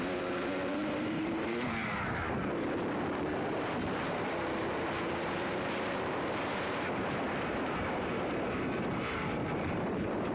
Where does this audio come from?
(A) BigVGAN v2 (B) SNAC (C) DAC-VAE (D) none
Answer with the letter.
A